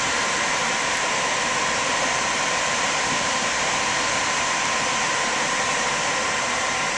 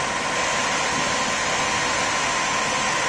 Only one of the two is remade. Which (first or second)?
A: first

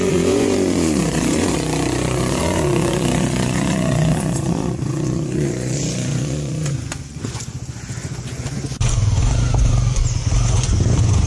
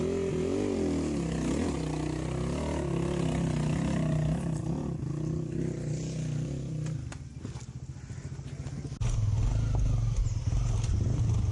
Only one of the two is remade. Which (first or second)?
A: first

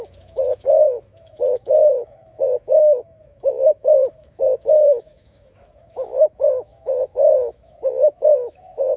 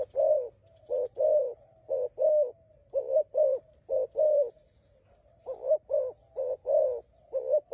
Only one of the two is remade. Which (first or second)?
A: first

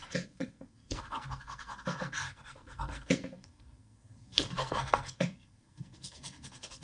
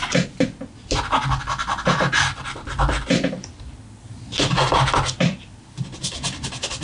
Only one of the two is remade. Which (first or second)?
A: first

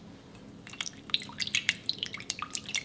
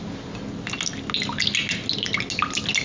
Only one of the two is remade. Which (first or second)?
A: first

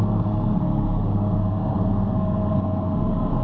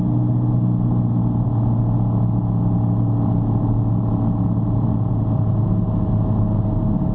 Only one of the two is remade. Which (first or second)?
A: first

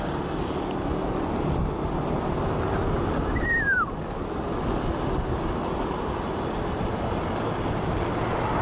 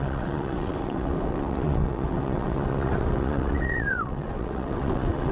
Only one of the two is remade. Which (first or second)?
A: second